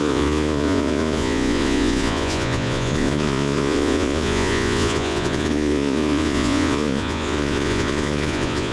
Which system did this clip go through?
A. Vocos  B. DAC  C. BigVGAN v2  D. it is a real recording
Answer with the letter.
A